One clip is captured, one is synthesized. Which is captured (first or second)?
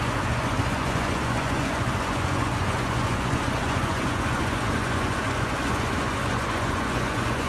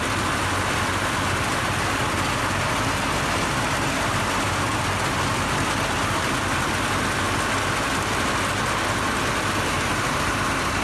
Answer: second